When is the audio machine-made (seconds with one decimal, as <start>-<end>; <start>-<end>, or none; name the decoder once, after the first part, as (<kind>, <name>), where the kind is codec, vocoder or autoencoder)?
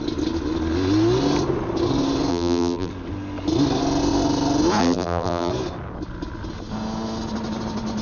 2.3-2.9 (vocoder, BigVGAN v2); 4.8-5.5